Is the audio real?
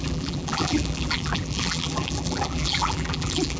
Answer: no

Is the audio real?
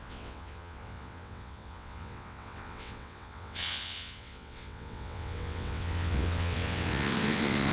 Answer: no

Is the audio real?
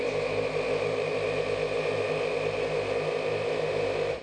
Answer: yes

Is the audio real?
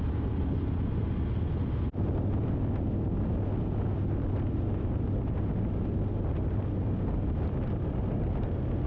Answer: yes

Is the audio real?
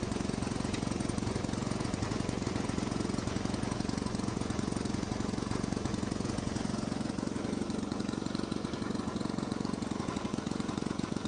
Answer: no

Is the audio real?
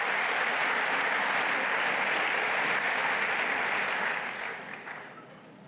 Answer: yes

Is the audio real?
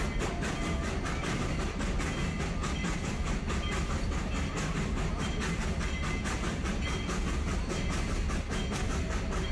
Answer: yes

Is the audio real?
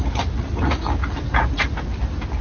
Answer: yes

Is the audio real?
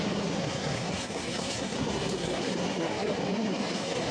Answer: no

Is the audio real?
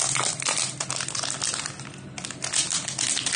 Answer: yes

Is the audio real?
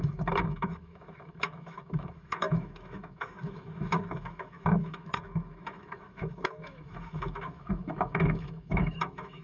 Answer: no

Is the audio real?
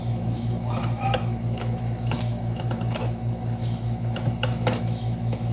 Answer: no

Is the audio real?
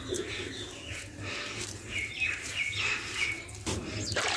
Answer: yes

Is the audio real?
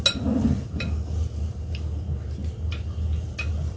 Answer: yes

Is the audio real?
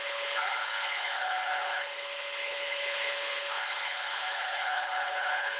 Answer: no